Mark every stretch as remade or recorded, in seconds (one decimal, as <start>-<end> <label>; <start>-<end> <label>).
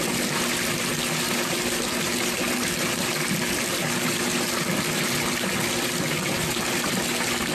0.0-0.9 recorded; 0.9-1.5 remade; 1.5-3.8 recorded; 3.8-4.9 remade; 4.9-7.5 recorded